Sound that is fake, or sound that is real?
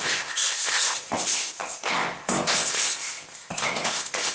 fake